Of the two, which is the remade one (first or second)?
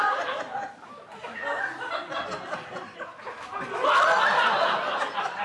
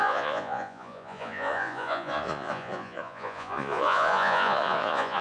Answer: second